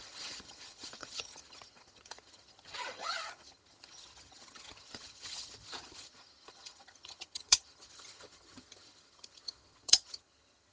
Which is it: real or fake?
fake